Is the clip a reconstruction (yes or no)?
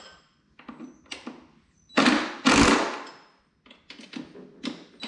no